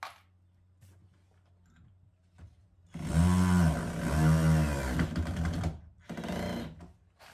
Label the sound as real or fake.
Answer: real